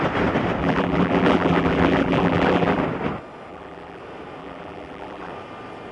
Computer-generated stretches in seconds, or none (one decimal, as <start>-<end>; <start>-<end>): 0.6-2.8; 3.5-4.0; 4.4-5.3